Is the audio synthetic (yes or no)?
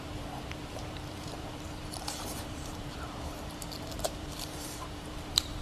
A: yes